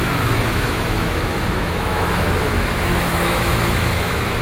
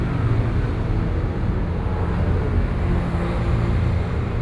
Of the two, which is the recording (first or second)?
second